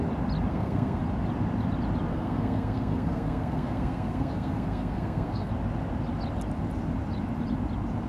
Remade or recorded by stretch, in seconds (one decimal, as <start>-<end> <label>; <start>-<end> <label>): 0.0-0.5 recorded; 0.5-1.0 remade; 1.0-2.1 recorded; 2.1-5.5 remade; 5.5-8.1 recorded